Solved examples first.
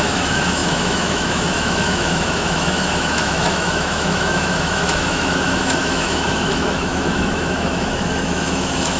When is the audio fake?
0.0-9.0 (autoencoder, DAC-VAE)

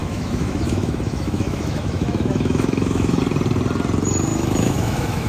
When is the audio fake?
0.0-3.2 (autoencoder, DAC-VAE); 4.3-5.3

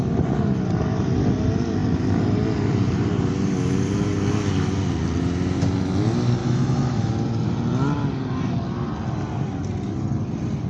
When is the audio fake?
6.4-7.1 (autoencoder, DAC-VAE)

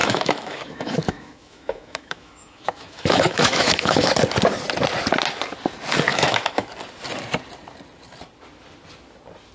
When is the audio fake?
0.0-4.1 (autoencoder, DAC-VAE); 6.1-6.7

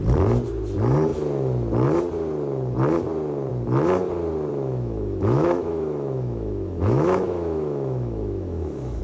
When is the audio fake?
4.5-9.0 (autoencoder, DAC-VAE)

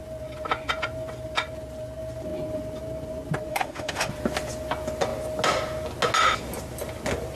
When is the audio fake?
3.5-4.1 (autoencoder, DAC-VAE)

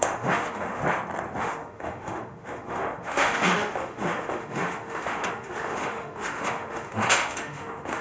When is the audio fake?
0.0-0.8 (autoencoder, DAC-VAE); 1.4-8.0

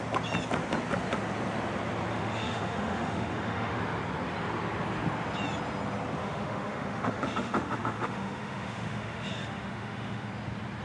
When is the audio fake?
2.1-3.8 (autoencoder, DAC-VAE); 6.2-10.3